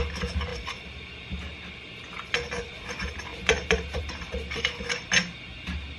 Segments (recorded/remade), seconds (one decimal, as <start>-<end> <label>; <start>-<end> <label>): 0.0-3.3 recorded; 3.3-4.0 remade; 4.0-6.0 recorded